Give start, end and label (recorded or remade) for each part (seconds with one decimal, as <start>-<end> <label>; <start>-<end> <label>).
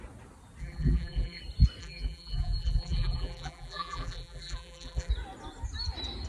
0.0-0.6 recorded; 0.6-1.4 remade; 1.4-1.8 recorded; 1.8-5.1 remade; 5.1-6.3 recorded